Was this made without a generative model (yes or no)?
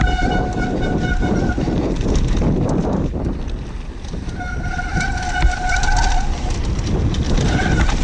yes